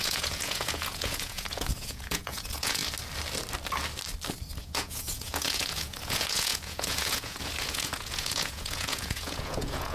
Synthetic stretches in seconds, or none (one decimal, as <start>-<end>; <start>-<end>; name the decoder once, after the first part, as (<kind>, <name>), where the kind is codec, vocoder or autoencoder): 0.0-2.8 (vocoder, Vocos); 4.6-9.9